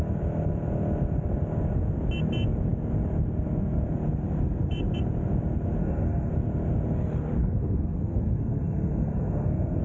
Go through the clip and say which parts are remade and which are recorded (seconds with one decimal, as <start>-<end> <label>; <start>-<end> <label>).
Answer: 0.0-5.8 recorded; 5.8-6.3 remade; 6.3-7.4 recorded; 7.4-9.8 remade